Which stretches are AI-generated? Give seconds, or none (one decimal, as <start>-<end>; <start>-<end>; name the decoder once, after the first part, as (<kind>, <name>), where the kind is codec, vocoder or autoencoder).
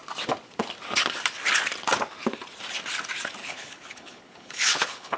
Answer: 3.4-5.2 (codec, HILCodec)